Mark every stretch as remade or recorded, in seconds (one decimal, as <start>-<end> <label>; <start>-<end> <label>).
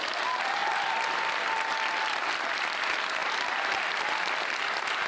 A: 0.0-5.1 recorded